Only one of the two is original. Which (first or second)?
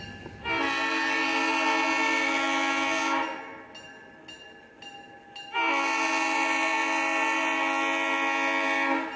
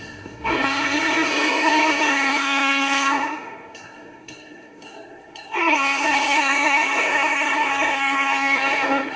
first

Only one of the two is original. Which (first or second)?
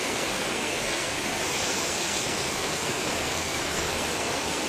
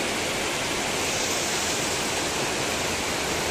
second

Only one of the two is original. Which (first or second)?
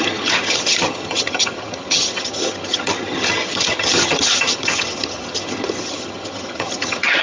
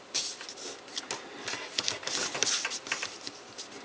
second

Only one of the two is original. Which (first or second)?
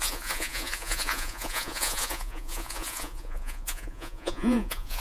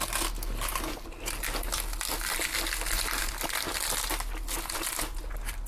second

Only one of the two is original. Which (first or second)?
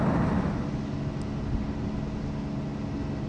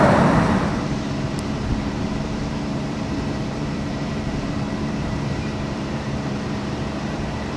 first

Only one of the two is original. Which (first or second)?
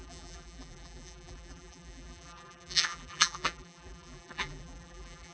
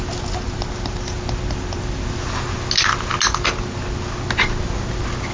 second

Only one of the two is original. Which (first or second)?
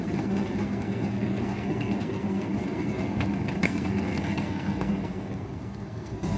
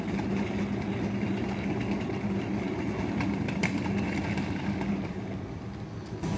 second